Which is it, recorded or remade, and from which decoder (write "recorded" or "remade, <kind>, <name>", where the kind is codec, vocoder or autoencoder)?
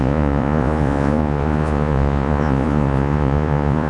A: remade, vocoder, Vocos